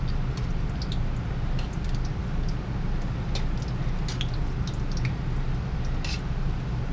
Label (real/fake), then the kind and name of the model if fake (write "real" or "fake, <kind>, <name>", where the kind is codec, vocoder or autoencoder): real